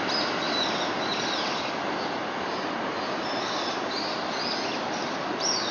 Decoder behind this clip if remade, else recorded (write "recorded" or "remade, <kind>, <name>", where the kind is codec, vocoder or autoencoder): recorded